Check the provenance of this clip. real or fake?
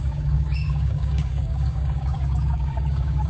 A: fake